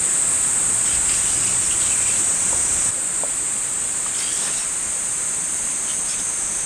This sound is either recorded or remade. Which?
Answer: recorded